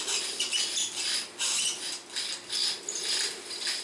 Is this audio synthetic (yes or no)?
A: no